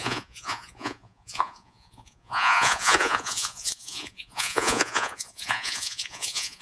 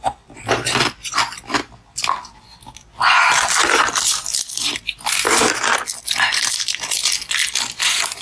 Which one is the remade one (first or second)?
first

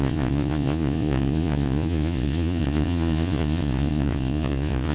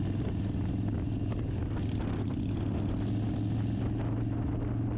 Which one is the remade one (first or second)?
first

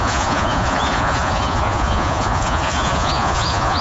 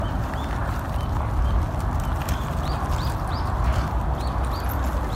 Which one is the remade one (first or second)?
first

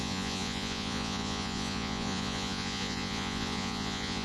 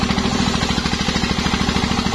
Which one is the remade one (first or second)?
first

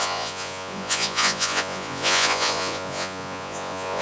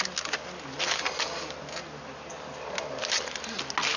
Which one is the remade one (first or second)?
first